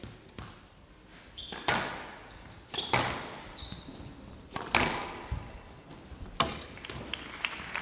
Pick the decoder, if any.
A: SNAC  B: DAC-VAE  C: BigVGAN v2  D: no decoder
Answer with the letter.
D